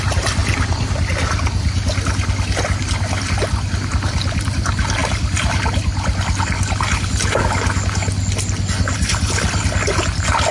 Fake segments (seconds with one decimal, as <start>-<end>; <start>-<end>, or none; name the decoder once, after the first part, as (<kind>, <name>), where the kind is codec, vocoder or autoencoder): 0.4-0.9 (vocoder, BigVGAN v2)